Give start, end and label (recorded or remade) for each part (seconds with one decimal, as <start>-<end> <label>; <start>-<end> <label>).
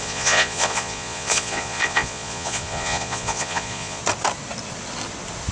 0.0-4.0 remade; 4.0-5.5 recorded